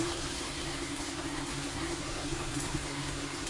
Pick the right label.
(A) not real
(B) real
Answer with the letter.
A